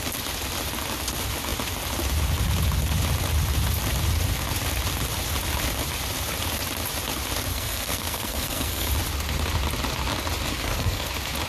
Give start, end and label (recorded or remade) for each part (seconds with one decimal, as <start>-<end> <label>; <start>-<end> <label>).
0.0-7.5 recorded; 7.5-8.9 remade; 8.9-10.5 recorded; 10.5-11.1 remade; 11.1-11.5 recorded